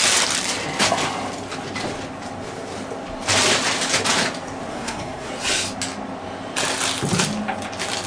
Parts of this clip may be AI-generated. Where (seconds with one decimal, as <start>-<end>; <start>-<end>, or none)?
4.7-5.3